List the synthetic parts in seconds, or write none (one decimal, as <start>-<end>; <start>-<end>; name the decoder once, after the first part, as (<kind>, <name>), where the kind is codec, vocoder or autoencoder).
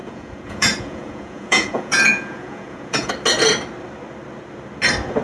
0.0-3.1 (vocoder, Vocos)